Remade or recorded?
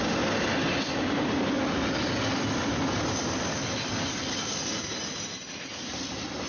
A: recorded